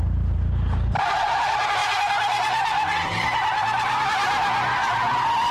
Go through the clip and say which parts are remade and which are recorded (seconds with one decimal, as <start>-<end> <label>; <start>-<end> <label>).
0.0-5.5 recorded